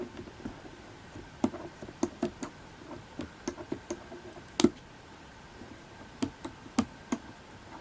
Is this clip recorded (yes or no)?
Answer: yes